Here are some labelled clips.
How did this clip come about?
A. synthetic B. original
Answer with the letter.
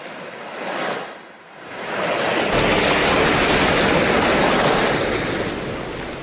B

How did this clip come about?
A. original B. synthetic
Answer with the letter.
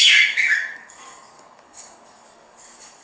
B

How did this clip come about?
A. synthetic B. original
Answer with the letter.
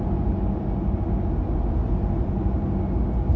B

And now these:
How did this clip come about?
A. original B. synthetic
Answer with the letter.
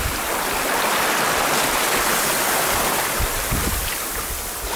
A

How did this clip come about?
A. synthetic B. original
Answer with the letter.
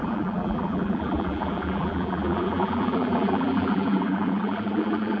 A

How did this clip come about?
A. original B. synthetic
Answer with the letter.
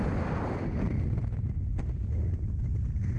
A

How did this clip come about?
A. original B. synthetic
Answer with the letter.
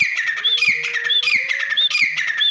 A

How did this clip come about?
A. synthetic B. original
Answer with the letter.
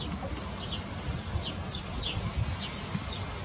B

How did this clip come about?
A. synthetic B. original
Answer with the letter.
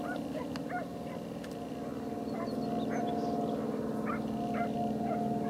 B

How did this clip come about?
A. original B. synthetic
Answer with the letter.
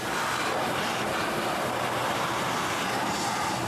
A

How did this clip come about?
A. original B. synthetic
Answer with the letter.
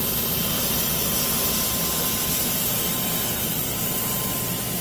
A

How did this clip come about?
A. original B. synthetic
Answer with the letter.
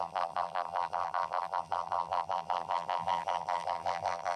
B